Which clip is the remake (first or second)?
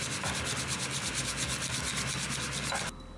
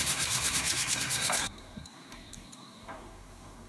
second